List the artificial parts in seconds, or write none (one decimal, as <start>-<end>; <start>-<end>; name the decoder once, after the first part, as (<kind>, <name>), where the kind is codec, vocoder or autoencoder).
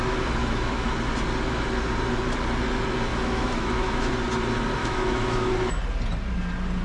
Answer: 0.4-0.9 (autoencoder, DAC-VAE); 3.1-4.1; 4.8-5.5